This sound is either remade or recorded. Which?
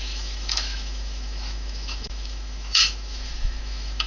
remade